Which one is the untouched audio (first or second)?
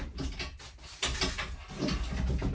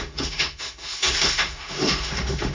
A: first